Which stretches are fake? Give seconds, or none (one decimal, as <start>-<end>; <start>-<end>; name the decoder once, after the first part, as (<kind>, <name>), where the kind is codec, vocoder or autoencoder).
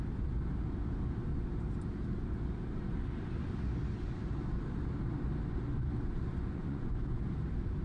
6.3-7.2 (vocoder, Vocos)